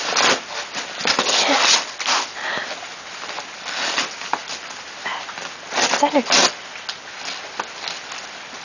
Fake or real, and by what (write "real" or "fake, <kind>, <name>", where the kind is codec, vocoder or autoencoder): real